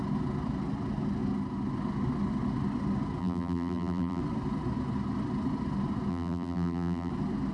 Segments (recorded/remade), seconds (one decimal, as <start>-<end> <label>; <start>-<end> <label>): 0.0-3.2 recorded; 3.2-4.2 remade; 4.2-6.1 recorded; 6.1-7.1 remade; 7.1-7.5 recorded